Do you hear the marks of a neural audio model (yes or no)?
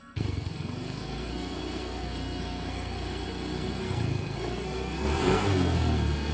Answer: yes